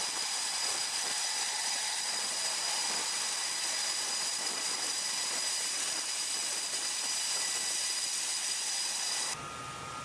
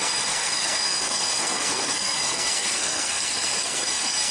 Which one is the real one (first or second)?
first